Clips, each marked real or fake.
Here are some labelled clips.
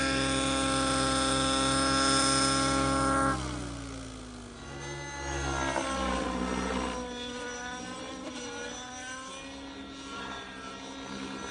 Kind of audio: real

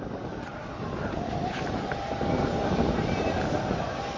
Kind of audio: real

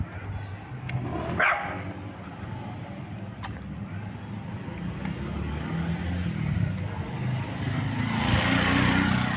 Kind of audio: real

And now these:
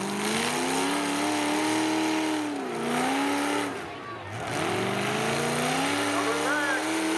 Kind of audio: real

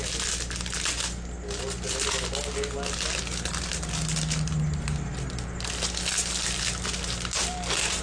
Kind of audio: real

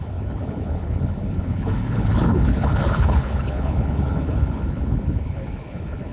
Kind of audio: fake